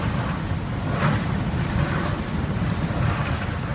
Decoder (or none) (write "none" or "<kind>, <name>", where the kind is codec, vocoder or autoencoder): none